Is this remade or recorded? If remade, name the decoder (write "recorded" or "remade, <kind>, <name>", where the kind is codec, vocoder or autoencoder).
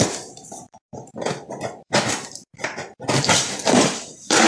remade, vocoder, BigVGAN v2